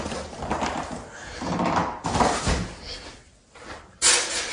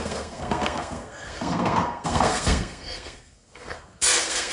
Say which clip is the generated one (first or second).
second